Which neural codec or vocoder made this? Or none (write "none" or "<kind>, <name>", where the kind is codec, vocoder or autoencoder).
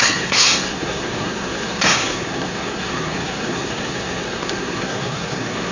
codec, SNAC